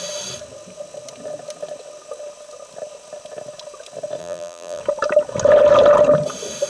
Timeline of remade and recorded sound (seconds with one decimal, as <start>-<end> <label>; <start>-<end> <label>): 0.0-4.2 recorded; 4.2-4.8 remade; 4.8-6.7 recorded